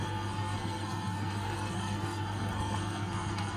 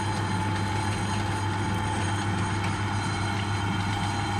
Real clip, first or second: second